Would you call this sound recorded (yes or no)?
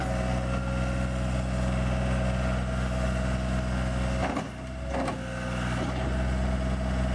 yes